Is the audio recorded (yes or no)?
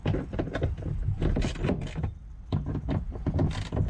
yes